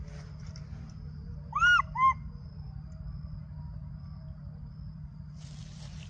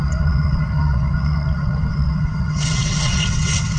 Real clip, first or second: first